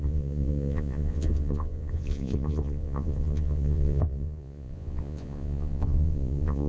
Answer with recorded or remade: remade